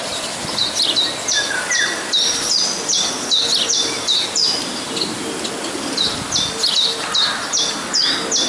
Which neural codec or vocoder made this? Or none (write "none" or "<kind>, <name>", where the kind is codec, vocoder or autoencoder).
none